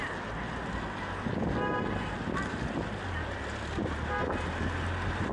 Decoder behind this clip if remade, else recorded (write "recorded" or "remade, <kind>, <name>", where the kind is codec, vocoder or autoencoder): recorded